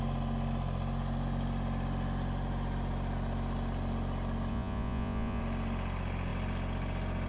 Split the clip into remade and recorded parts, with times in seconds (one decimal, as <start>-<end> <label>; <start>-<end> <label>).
0.0-4.5 recorded; 4.5-5.4 remade; 5.4-7.3 recorded